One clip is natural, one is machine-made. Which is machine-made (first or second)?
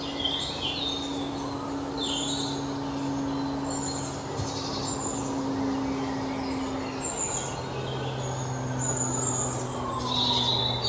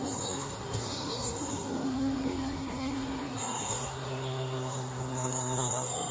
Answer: second